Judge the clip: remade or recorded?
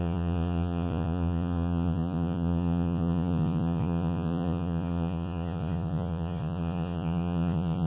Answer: remade